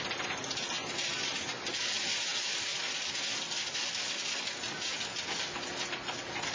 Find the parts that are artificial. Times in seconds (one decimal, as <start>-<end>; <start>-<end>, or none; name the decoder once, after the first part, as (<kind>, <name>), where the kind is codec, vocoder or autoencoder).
none